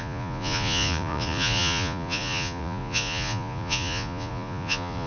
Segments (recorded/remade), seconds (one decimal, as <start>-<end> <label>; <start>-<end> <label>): 0.0-5.1 remade